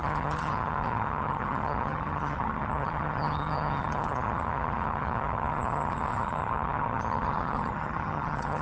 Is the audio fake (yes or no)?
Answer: yes